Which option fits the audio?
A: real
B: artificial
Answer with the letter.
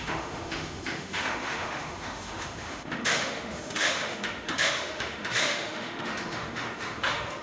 B